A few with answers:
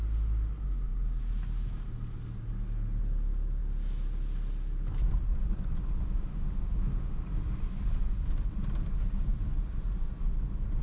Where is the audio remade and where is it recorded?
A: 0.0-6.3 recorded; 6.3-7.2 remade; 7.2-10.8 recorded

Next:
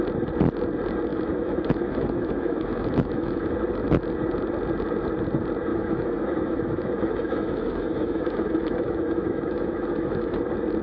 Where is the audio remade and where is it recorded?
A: 0.0-1.1 recorded; 1.1-3.5 remade; 3.5-5.7 recorded; 5.7-10.4 remade; 10.4-10.8 recorded

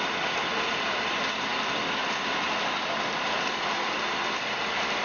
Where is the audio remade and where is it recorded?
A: 0.0-5.0 recorded

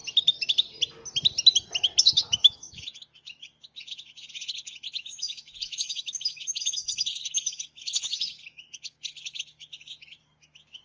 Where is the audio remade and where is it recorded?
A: 0.0-2.0 recorded; 2.0-10.8 remade

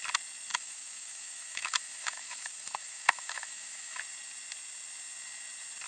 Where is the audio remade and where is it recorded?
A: 0.0-0.5 recorded; 0.5-4.0 remade; 4.0-5.9 recorded